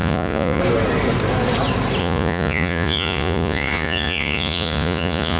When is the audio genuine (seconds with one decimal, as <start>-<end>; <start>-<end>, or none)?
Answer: 0.6-2.0